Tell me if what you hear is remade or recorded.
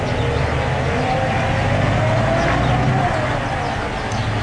recorded